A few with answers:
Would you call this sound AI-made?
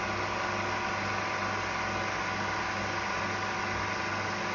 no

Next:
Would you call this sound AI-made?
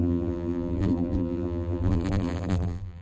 yes